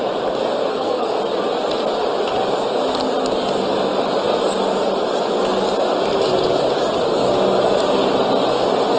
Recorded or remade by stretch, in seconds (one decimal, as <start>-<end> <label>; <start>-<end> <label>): 0.0-0.7 recorded; 0.7-1.2 remade; 1.2-9.0 recorded